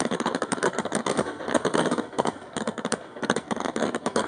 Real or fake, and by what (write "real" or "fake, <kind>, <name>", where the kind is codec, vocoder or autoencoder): fake, codec, SNAC